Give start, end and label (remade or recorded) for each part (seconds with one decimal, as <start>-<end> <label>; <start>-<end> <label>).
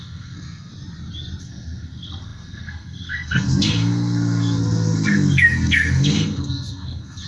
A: 0.0-0.7 remade; 0.7-1.4 recorded; 1.4-7.3 remade